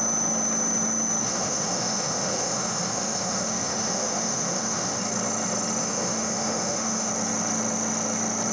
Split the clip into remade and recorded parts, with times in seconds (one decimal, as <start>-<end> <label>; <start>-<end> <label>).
0.0-1.2 recorded; 1.2-5.0 remade; 5.0-5.8 recorded; 5.8-7.1 remade; 7.1-8.5 recorded

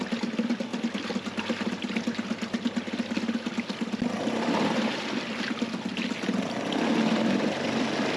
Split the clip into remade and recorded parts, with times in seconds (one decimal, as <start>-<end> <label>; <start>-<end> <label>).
0.0-8.2 recorded

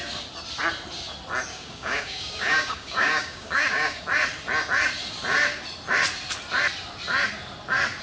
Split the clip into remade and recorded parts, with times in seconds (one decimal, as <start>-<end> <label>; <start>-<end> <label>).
0.0-1.5 recorded; 1.5-4.0 remade; 4.0-8.0 recorded

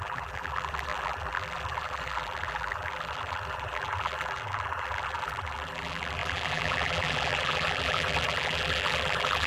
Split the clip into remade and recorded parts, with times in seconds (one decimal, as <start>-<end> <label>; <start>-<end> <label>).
0.0-9.5 remade

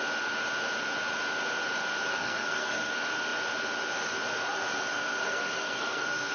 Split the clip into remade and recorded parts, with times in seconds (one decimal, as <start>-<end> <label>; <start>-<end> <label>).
0.0-2.1 recorded; 2.1-2.9 remade; 2.9-4.9 recorded; 4.9-6.3 remade